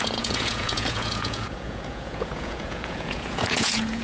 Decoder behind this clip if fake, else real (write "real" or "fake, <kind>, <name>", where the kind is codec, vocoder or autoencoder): fake, vocoder, Vocos